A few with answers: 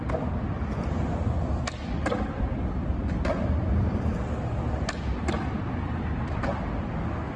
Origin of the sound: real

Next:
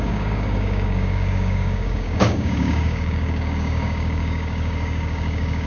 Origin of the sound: fake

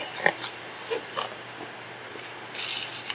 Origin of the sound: real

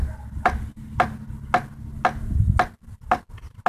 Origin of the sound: real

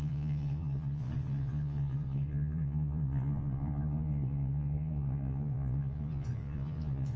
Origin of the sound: fake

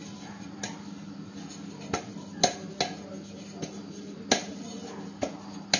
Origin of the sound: real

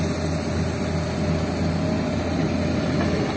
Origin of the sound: real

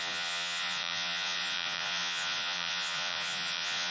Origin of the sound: fake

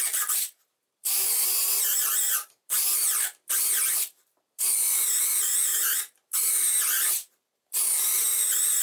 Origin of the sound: fake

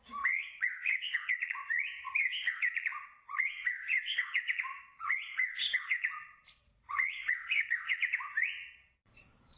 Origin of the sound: fake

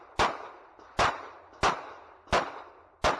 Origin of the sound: real